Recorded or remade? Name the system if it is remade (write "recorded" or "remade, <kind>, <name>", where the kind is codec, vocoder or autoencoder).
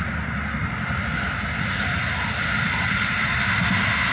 recorded